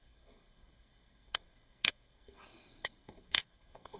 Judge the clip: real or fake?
fake